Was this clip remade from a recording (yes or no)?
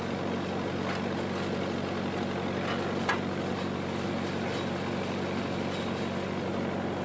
no